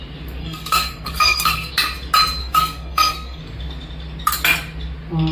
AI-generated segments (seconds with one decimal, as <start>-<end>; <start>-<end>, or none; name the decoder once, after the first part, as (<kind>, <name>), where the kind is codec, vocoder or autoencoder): 0.4-1.7 (codec, SNAC); 2.4-3.4